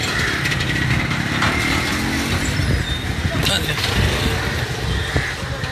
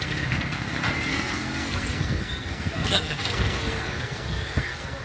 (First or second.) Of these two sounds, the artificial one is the second